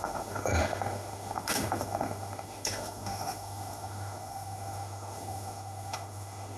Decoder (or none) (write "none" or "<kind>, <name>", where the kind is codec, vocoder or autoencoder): autoencoder, DAC-VAE